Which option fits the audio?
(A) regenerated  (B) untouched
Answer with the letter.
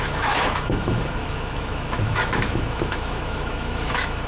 A